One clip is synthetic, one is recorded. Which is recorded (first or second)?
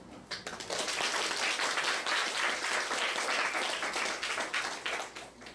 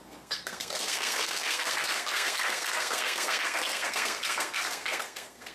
first